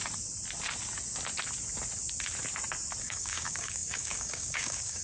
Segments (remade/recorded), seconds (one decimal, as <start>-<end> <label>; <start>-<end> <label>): 0.0-3.0 recorded; 3.0-5.0 remade